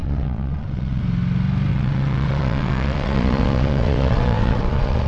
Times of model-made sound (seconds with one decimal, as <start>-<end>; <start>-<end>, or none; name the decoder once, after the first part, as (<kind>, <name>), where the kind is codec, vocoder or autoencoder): 0.0-1.0 (vocoder, WaveNeXt); 1.7-5.1